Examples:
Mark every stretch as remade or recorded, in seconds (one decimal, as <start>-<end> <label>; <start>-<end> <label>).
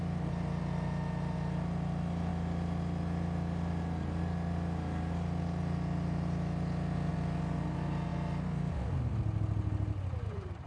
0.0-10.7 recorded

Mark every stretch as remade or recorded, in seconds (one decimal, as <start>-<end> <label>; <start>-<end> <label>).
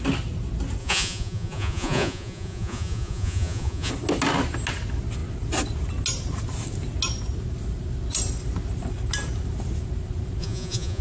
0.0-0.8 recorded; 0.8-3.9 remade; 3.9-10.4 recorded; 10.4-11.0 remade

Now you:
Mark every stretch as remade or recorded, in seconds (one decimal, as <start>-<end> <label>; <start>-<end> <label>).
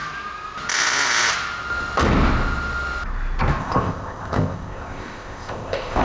0.0-3.6 recorded; 3.6-6.0 remade